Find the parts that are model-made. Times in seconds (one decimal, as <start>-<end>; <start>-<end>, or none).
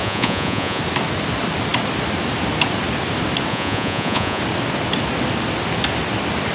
0.0-0.8; 3.5-4.4